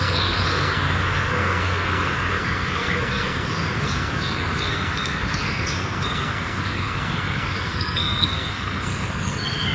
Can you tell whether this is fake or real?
fake